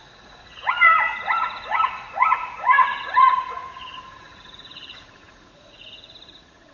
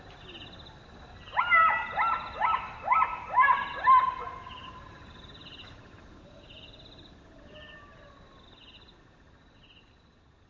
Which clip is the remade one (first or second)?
first